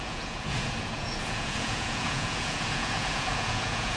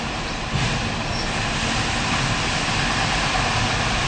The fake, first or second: first